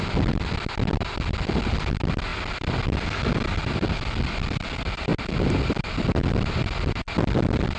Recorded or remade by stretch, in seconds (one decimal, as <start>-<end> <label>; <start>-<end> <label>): 0.0-7.8 recorded